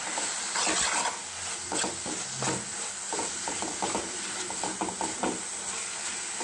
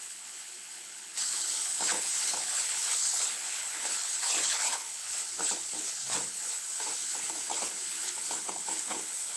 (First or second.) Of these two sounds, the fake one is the second